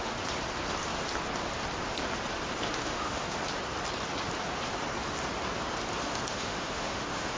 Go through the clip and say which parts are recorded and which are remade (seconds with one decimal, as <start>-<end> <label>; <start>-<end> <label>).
0.0-2.7 recorded; 2.7-3.4 remade; 3.4-6.0 recorded; 6.0-7.4 remade

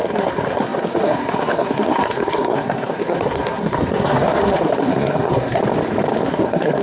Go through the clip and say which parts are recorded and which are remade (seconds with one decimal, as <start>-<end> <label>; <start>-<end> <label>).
0.0-5.6 remade; 5.6-6.2 recorded; 6.2-6.8 remade

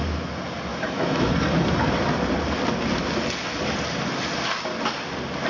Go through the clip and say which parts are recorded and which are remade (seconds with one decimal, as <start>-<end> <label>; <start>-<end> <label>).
0.0-0.7 recorded; 0.7-1.3 remade; 1.3-5.5 recorded

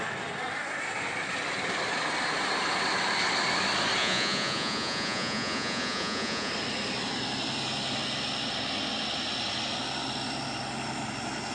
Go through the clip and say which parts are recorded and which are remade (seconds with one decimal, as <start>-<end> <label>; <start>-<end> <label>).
0.0-4.0 recorded; 4.0-6.5 remade; 6.5-11.5 recorded

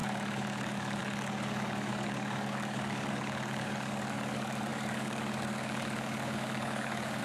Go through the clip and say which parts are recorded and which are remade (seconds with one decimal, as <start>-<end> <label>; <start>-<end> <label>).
0.0-7.2 remade

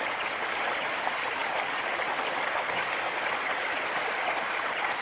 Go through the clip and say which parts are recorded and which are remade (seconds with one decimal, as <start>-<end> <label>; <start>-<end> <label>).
0.0-5.0 recorded

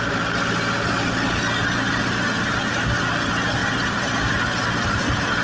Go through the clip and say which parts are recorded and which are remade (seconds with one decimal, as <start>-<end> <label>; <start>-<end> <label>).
0.0-5.4 recorded

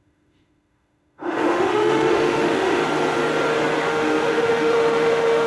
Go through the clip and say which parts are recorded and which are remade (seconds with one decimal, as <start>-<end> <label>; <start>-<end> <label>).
0.0-2.8 remade; 2.8-3.8 recorded; 3.8-5.5 remade